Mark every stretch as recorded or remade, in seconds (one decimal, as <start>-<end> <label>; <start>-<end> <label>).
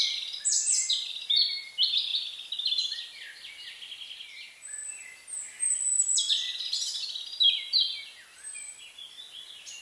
0.0-9.8 recorded